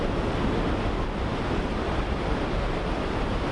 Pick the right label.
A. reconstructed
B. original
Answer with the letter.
B